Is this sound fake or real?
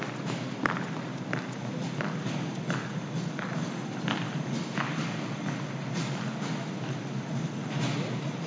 real